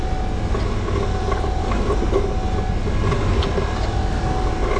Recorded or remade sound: recorded